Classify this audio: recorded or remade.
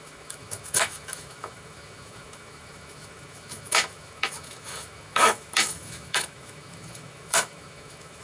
remade